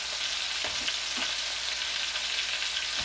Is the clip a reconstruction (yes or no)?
no